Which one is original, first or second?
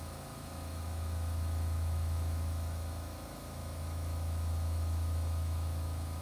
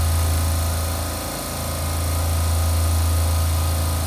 second